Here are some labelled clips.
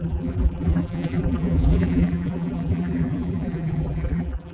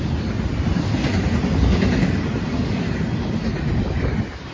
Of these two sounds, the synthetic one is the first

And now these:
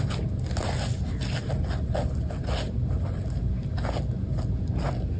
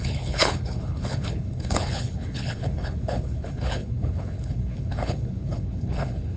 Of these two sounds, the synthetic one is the second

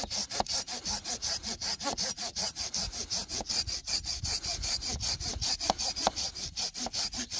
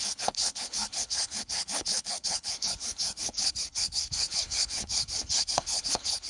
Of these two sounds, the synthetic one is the second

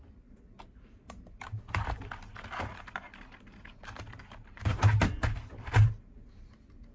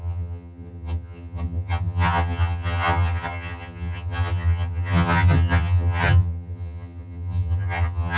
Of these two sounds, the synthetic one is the second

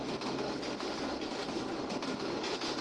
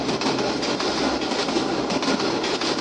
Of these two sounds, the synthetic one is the second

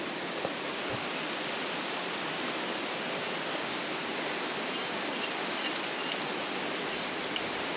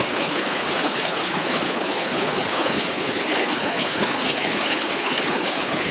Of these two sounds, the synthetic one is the second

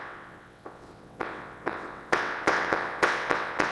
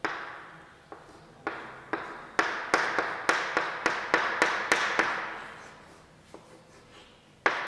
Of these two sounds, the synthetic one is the first